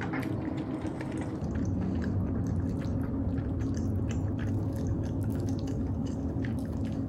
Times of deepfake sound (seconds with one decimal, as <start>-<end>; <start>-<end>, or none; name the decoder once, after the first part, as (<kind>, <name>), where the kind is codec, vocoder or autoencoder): 4.4-7.1 (codec, DAC)